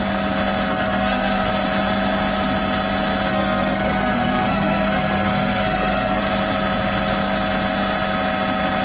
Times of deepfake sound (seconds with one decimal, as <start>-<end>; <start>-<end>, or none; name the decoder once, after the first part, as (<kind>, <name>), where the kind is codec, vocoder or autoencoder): 0.7-1.5 (codec, SNAC); 3.3-6.2